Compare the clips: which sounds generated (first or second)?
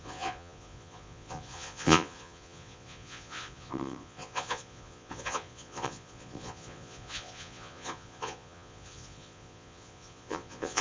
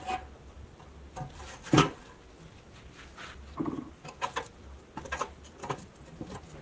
first